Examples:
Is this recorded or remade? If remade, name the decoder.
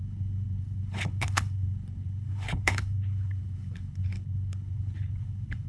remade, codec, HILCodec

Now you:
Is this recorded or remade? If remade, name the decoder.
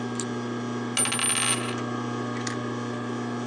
recorded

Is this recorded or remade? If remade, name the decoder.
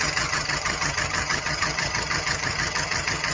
remade, vocoder, HiFi-GAN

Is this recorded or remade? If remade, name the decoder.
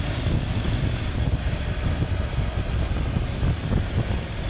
recorded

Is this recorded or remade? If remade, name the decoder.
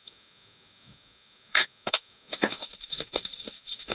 remade, codec, DAC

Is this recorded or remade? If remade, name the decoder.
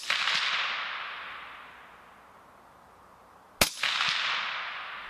recorded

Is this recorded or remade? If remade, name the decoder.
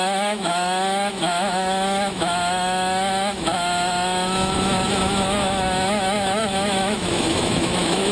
remade, autoencoder, DAC-VAE